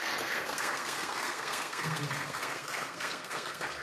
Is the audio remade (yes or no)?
yes